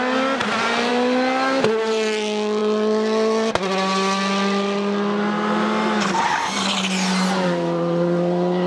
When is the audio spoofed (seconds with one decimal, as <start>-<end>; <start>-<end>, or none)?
none